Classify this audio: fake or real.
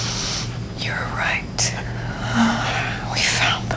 real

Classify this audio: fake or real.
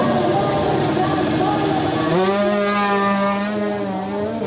real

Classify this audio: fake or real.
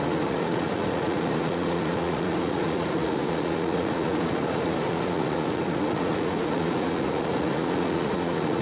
fake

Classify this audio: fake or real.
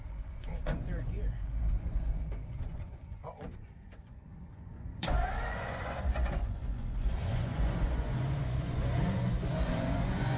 fake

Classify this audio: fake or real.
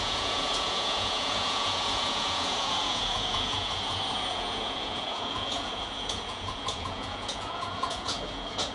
fake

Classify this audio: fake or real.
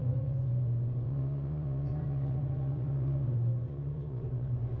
fake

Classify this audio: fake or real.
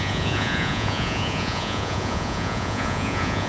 fake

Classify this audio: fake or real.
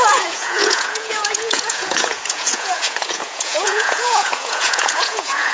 fake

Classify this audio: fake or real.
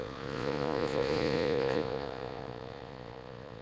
fake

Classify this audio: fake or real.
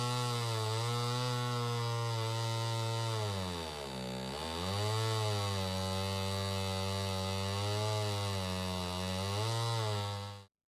real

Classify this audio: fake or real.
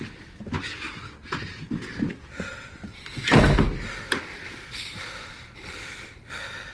real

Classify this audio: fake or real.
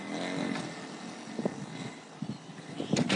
real